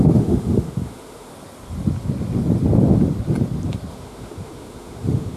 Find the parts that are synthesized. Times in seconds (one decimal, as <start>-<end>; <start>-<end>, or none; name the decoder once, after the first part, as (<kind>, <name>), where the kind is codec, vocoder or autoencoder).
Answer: 0.0-1.3 (autoencoder, DAC-VAE); 3.9-5.4